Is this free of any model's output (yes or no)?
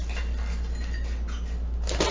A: yes